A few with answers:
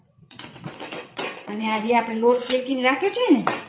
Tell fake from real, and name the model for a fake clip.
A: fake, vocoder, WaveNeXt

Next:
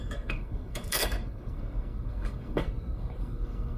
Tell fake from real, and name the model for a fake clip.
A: fake, codec, SNAC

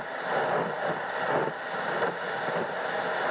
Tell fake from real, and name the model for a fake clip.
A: real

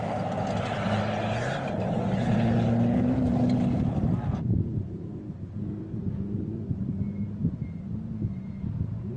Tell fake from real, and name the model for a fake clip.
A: real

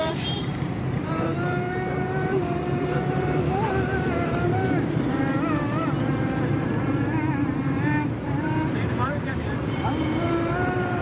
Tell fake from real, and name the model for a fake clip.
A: fake, vocoder, BigVGAN v2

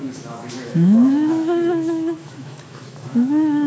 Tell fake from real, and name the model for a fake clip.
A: fake, autoencoder, DAC-VAE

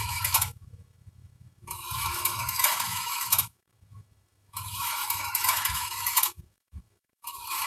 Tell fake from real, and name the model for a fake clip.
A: fake, autoencoder, DAC-VAE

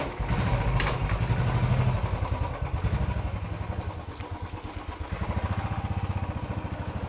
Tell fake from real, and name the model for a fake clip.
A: real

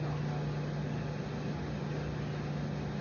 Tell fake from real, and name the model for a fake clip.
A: real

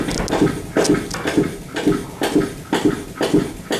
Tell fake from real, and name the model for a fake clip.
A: real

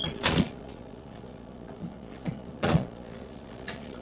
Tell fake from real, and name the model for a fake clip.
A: fake, vocoder, Vocos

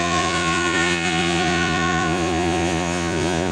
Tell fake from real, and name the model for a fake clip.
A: fake, vocoder, Vocos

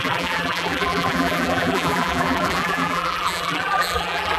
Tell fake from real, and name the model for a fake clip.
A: fake, vocoder, BigVGAN v2